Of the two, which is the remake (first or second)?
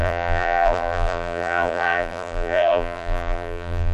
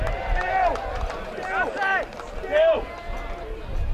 first